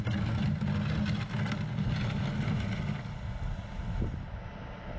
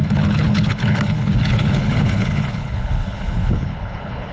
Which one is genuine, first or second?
first